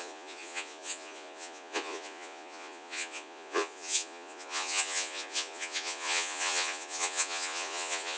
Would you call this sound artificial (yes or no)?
yes